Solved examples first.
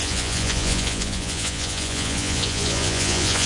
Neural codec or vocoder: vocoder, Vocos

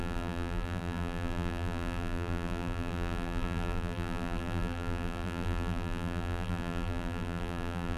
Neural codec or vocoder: vocoder, BigVGAN v2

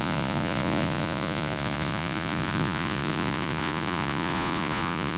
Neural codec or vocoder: vocoder, Vocos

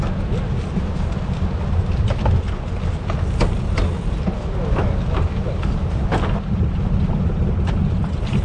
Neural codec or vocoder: none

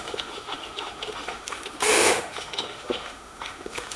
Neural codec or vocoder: autoencoder, DAC-VAE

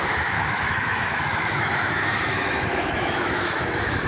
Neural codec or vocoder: autoencoder, DAC-VAE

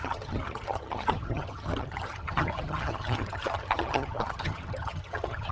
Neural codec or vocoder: vocoder, HiFi-GAN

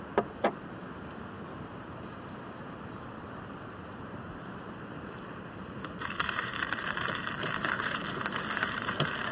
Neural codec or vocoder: vocoder, BigVGAN v2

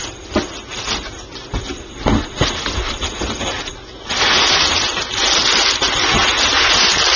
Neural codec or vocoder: none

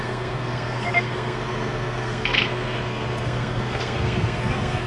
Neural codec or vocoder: codec, SNAC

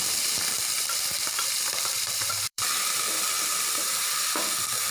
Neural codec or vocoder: vocoder, BigVGAN v2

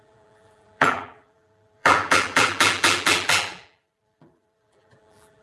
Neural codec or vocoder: vocoder, BigVGAN v2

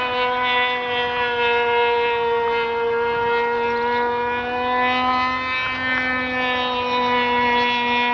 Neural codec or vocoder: none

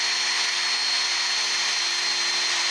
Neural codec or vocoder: none